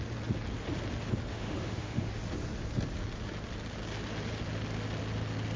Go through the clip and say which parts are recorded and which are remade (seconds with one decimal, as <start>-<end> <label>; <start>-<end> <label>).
0.0-1.3 recorded; 1.3-2.1 remade; 2.1-5.6 recorded